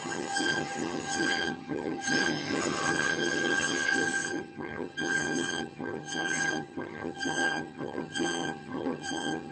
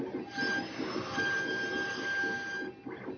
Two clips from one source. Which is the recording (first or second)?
second